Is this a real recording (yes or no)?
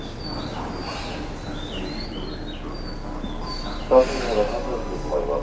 yes